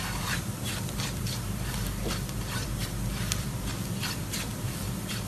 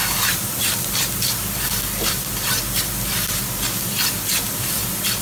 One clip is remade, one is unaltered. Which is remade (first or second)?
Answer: first